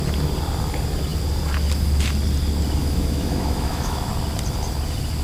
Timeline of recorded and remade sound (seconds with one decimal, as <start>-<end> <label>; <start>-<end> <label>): 0.0-2.8 recorded; 2.8-4.1 remade; 4.1-5.2 recorded